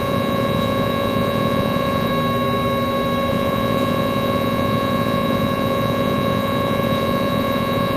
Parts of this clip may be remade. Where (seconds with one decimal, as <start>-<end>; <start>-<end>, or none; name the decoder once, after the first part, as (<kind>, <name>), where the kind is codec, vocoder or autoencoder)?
0.0-2.1 (vocoder, Vocos); 3.3-8.0